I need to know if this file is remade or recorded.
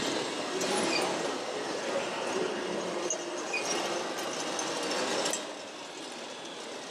recorded